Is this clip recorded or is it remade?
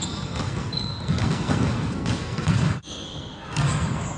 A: remade